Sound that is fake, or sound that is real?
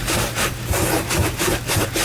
fake